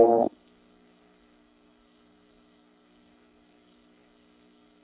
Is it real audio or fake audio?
fake